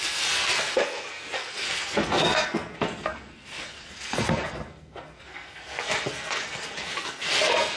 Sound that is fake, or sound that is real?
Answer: fake